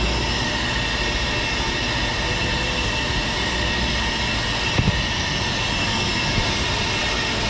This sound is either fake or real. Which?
real